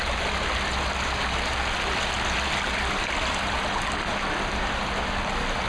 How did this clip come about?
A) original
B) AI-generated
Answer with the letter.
A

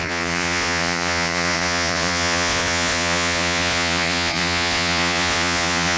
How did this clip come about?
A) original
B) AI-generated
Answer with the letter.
B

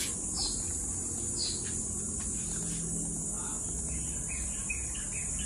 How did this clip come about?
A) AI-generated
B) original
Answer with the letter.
B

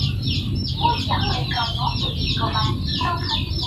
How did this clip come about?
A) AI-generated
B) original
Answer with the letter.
B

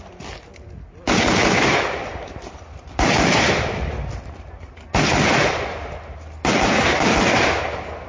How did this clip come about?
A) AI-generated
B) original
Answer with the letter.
B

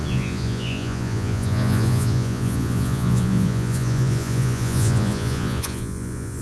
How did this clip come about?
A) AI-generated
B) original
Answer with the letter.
A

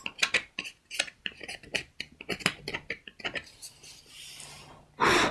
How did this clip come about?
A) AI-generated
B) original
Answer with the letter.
B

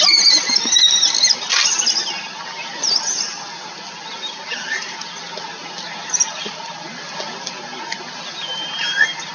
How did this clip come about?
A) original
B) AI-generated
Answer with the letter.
A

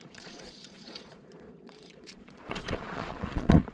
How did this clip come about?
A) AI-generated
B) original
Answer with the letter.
A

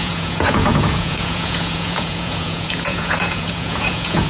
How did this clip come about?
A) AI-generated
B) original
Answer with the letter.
A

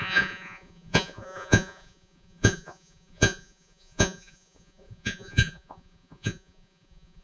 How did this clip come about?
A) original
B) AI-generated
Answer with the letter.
B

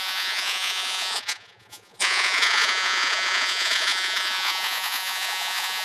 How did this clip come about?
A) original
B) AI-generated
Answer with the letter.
B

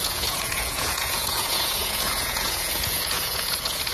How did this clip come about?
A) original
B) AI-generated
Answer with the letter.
B